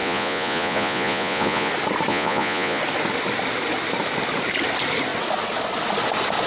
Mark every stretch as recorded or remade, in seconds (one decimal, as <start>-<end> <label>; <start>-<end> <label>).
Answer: 0.0-1.7 remade; 1.7-2.1 recorded; 2.1-2.8 remade; 2.8-6.5 recorded